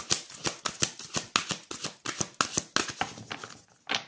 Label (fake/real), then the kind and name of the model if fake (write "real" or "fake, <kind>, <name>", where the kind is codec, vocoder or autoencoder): real